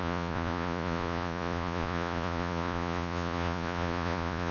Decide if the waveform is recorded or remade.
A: remade